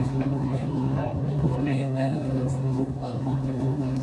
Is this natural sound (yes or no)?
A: no